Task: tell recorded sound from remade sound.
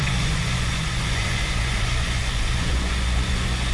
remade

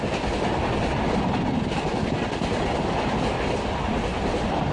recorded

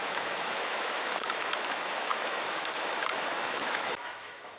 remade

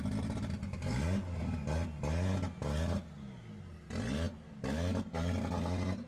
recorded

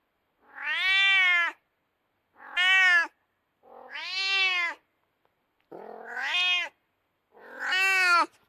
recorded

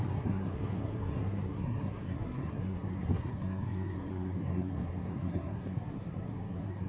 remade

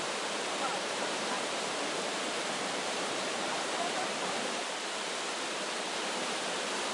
remade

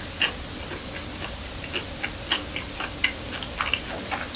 recorded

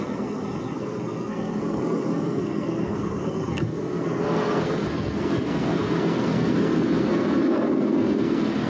remade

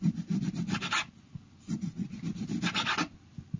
recorded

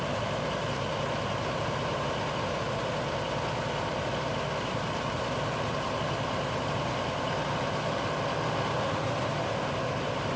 recorded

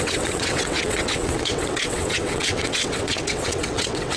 remade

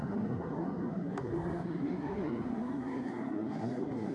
remade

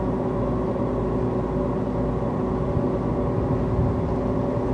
recorded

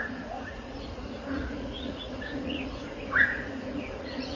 remade